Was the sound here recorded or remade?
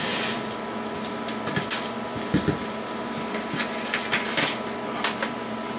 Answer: recorded